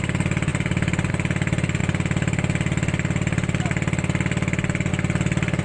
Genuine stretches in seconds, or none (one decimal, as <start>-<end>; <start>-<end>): 0.0-5.6